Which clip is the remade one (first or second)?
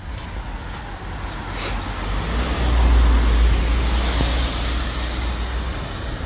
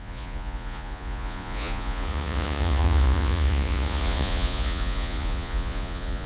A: second